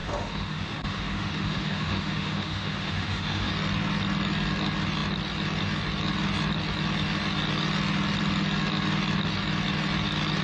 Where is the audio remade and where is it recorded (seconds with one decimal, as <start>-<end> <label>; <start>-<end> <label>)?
0.0-3.5 remade; 3.5-10.4 recorded